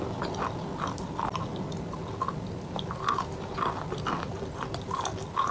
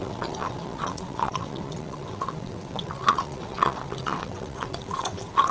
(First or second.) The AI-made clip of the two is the second